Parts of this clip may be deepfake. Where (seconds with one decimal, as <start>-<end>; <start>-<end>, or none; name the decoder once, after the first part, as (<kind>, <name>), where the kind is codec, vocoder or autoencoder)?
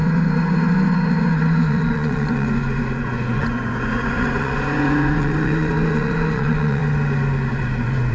0.0-6.8 (vocoder, Vocos); 7.5-8.1